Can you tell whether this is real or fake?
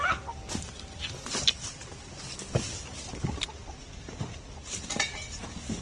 real